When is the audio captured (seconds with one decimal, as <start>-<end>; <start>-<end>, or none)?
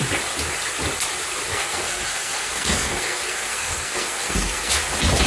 0.0-1.5; 4.7-5.3